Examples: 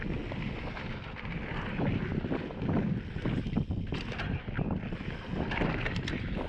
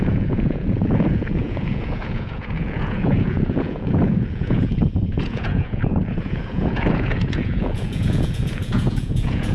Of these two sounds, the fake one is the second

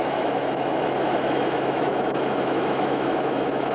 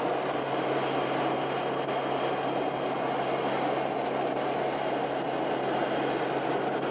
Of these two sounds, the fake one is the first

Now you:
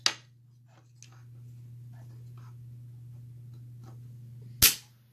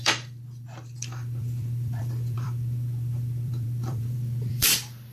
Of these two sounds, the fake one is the second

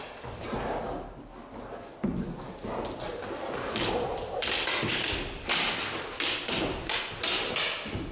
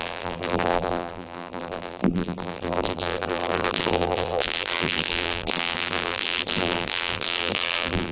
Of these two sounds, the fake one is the second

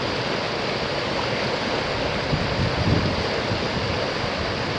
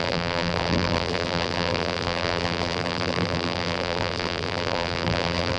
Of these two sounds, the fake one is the second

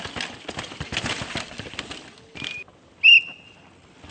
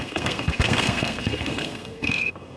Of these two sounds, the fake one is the second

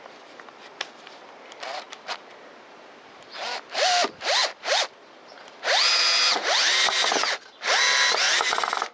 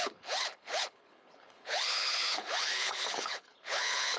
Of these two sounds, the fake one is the second